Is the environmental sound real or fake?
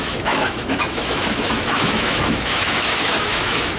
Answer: fake